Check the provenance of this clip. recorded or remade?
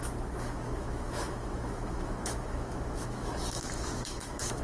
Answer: remade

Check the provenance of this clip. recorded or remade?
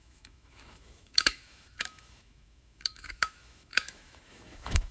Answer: remade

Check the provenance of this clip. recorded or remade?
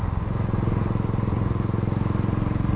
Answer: recorded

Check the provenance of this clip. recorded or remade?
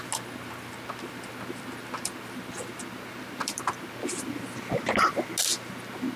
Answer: recorded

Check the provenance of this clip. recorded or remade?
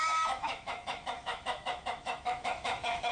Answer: remade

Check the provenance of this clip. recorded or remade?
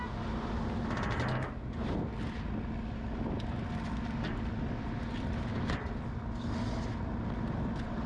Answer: recorded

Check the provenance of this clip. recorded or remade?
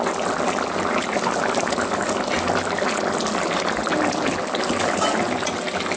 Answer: recorded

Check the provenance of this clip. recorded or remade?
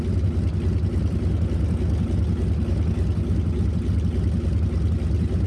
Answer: recorded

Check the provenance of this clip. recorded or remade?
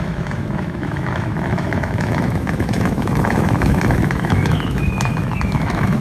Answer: remade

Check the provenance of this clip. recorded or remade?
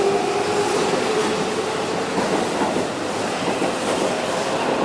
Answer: recorded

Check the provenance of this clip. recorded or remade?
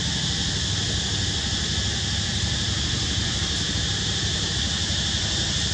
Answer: recorded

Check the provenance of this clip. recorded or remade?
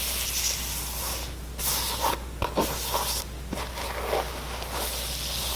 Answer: recorded